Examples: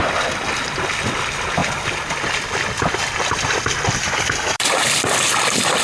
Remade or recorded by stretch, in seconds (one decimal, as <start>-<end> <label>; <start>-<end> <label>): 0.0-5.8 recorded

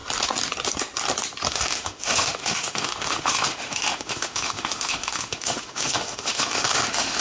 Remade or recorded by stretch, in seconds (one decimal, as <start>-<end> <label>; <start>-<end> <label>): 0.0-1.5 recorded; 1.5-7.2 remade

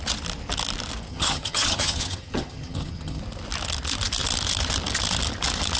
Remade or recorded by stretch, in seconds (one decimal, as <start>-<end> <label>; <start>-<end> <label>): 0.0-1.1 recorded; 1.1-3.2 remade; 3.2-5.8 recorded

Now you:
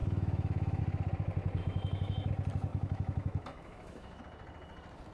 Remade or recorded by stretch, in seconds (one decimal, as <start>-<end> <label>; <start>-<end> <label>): 0.0-0.8 remade; 0.8-1.6 recorded; 1.6-2.3 remade; 2.3-2.7 recorded; 2.7-4.2 remade; 4.2-5.1 recorded

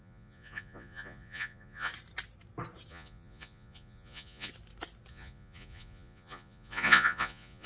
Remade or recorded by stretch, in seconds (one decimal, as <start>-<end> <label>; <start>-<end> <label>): 0.0-1.9 remade; 1.9-2.9 recorded; 2.9-4.5 remade; 4.5-5.1 recorded; 5.1-7.7 remade